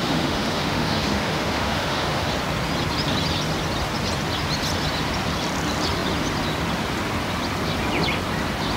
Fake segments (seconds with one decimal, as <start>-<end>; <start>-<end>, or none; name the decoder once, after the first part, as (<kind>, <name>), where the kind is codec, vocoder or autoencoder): 0.0-2.3 (autoencoder, DAC-VAE)